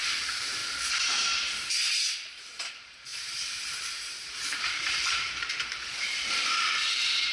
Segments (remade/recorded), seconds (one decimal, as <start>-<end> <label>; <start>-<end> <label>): 0.0-0.6 remade; 0.6-2.7 recorded; 2.7-7.3 remade

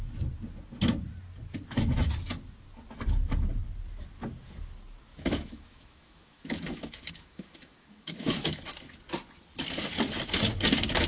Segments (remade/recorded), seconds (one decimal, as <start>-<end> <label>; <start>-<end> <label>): 0.0-5.1 recorded; 5.1-8.8 remade; 8.8-11.1 recorded

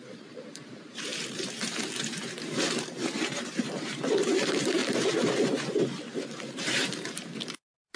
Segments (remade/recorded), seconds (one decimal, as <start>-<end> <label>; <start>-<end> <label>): 0.0-4.8 remade; 4.8-5.3 recorded; 5.3-8.0 remade

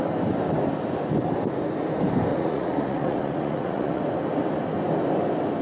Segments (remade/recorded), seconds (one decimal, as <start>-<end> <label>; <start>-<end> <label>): 0.0-2.3 recorded; 2.3-4.0 remade; 4.0-5.6 recorded

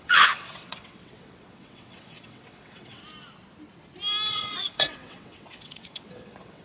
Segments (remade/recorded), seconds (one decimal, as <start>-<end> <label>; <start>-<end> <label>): 0.0-3.0 remade; 3.0-4.3 recorded; 4.3-6.6 remade